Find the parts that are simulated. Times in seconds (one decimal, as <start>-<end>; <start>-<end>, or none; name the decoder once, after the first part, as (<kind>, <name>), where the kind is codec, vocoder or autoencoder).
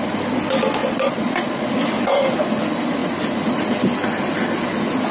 0.8-1.6 (vocoder, Vocos)